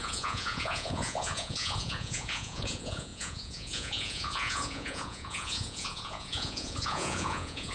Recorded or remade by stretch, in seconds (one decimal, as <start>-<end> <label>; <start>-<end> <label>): 0.0-7.7 remade